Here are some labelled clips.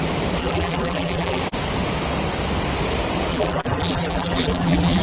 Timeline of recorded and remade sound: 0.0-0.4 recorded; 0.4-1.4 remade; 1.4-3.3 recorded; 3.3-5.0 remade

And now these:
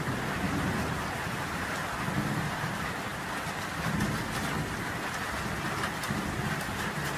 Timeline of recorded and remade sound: 0.0-0.9 remade; 0.9-7.2 recorded

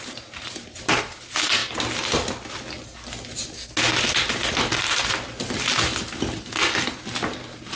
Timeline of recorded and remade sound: 0.0-1.6 remade; 1.6-4.8 recorded; 4.8-5.9 remade; 5.9-7.8 recorded

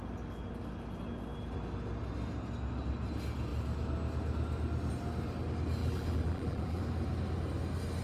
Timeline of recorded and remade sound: 0.0-5.8 recorded; 5.8-6.8 remade; 6.8-8.0 recorded

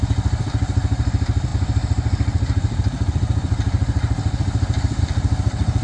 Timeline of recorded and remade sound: 0.0-5.8 remade

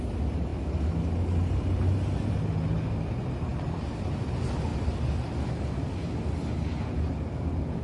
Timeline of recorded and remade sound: 0.0-3.5 recorded; 3.5-4.0 remade; 4.0-4.7 recorded; 4.7-5.7 remade; 5.7-7.8 recorded